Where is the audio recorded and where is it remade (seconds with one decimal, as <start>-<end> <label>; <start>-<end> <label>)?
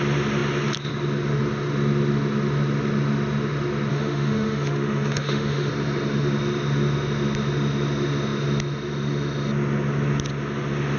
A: 0.0-3.9 recorded; 3.9-5.7 remade; 5.7-11.0 recorded